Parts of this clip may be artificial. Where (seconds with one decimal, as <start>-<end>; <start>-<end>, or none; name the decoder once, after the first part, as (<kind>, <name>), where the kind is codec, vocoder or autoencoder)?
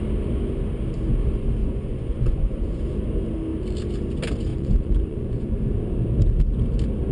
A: 1.6-2.8 (vocoder, Vocos); 4.5-5.7